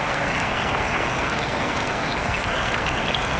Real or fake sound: fake